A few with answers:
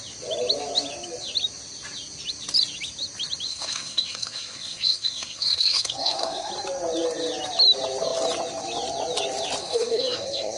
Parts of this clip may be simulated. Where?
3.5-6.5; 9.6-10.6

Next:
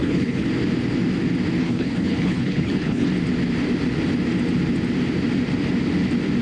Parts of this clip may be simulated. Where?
0.0-0.5; 1.6-3.1

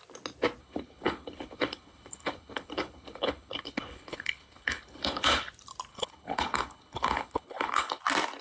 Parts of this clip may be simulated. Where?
0.6-5.5; 5.9-8.0